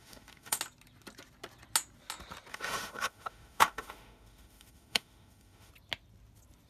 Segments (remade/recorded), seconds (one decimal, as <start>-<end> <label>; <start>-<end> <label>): 0.0-0.6 remade; 0.6-2.5 recorded; 2.5-5.7 remade; 5.7-6.7 recorded